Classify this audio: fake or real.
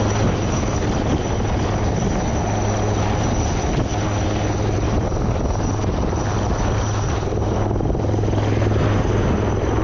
real